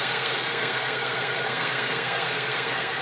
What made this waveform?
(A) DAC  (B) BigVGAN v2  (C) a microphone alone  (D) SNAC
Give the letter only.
D